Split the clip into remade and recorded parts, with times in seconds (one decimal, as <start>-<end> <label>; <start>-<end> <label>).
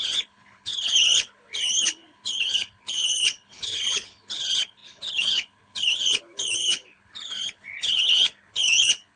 0.0-9.2 remade